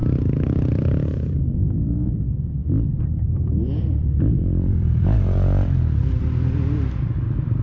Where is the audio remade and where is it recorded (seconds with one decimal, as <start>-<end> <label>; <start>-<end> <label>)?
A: 0.0-2.1 remade; 2.1-2.6 recorded; 2.6-6.2 remade; 6.2-7.6 recorded

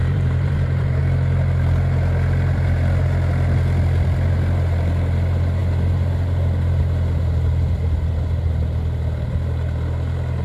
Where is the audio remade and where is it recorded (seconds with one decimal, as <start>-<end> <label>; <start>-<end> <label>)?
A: 0.0-1.0 remade; 1.0-10.4 recorded